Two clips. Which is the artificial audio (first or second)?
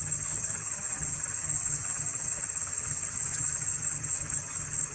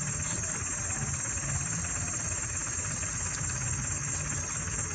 first